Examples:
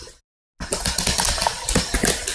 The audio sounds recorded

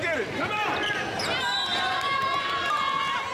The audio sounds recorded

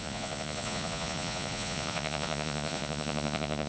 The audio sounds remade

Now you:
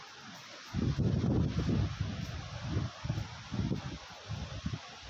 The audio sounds recorded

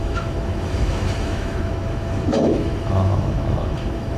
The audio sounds remade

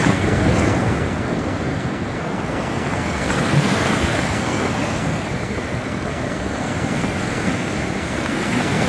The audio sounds remade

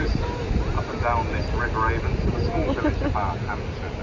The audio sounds recorded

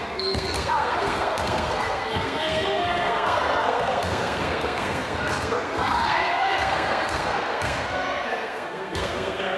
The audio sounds remade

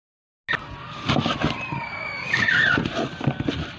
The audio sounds recorded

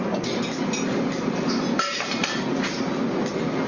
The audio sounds recorded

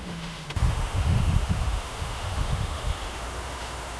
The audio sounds remade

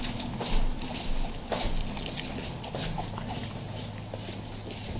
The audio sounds recorded